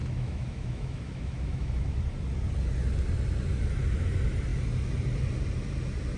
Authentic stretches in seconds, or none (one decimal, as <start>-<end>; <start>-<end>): 2.0-6.2